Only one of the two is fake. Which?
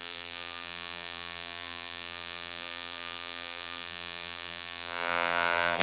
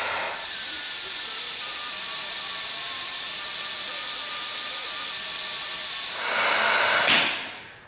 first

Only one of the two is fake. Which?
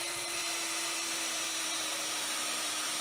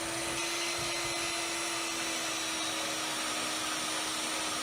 first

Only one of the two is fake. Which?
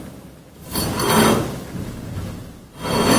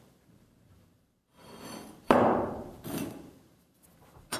second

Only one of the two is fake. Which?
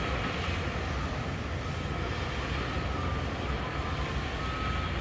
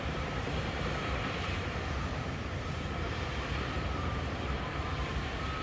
second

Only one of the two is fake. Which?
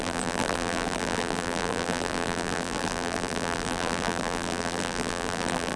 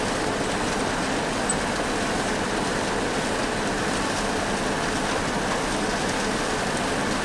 first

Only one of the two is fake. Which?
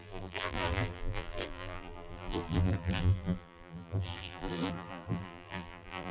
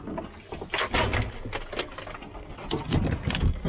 first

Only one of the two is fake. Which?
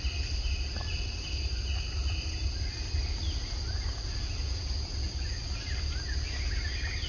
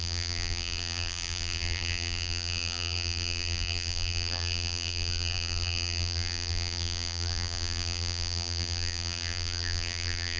second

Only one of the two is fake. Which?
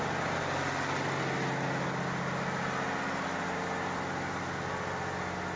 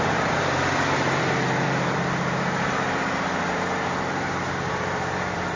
second